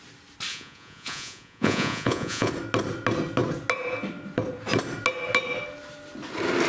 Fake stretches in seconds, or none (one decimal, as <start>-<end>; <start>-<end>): 0.5-2.5

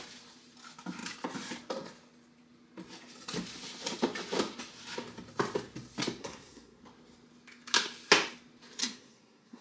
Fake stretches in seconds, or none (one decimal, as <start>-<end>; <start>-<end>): 6.2-6.8; 8.8-9.6

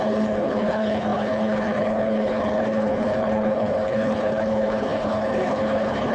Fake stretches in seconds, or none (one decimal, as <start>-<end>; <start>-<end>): 0.0-6.1